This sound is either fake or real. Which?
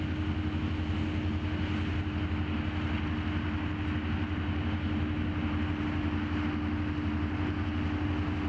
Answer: real